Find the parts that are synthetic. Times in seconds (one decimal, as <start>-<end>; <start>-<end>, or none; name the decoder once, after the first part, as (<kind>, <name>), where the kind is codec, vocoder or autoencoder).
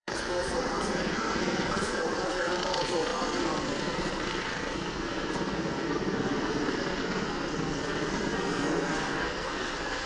0.0-10.1 (codec, SNAC)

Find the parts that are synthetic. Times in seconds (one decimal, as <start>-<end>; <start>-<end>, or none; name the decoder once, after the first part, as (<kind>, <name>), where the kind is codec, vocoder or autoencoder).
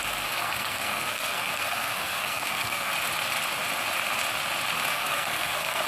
0.0-2.9 (codec, SNAC); 4.9-5.9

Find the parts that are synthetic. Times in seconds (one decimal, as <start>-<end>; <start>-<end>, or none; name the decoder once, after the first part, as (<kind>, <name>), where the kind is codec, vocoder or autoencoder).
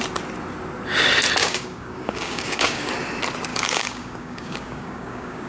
1.4-2.9 (codec, DAC); 3.5-5.5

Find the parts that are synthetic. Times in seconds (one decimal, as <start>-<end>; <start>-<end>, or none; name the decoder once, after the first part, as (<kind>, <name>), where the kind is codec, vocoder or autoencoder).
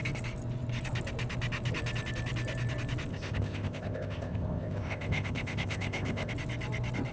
3.1-6.3 (codec, ZipCodec)